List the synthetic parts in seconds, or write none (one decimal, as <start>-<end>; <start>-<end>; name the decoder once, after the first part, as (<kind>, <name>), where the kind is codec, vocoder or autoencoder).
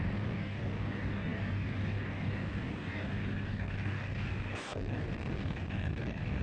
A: 0.0-6.4 (codec, DAC)